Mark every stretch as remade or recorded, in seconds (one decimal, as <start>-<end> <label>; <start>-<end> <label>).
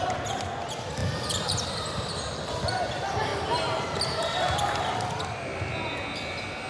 0.0-6.7 recorded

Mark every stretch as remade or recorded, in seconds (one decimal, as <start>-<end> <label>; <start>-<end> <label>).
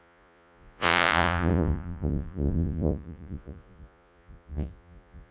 0.0-5.3 remade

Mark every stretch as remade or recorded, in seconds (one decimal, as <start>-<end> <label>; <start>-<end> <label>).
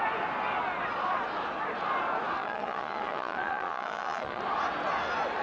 0.0-2.4 recorded; 2.4-4.4 remade; 4.4-5.4 recorded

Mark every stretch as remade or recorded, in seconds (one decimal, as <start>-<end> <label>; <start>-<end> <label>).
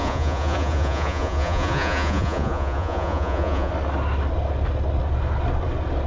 0.0-3.7 remade; 3.7-6.1 recorded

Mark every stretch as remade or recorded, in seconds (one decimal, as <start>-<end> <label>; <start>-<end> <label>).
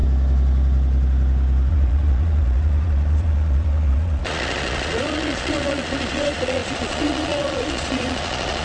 0.0-1.7 recorded; 1.7-8.6 remade